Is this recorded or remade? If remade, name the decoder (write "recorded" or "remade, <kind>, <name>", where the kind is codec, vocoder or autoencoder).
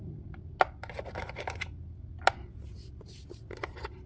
recorded